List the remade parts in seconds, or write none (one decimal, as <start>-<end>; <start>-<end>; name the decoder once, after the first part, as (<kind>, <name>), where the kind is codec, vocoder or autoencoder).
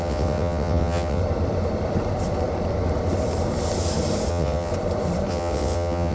0.0-1.2 (vocoder, WaveNeXt); 4.3-4.7; 5.3-6.1